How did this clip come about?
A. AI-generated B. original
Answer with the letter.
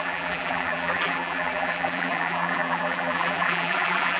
A